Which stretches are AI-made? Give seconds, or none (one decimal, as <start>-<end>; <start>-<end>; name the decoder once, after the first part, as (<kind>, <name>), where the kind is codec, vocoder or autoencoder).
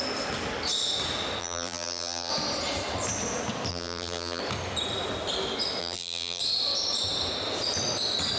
1.4-2.3 (vocoder, BigVGAN v2); 3.7-4.4; 5.8-6.4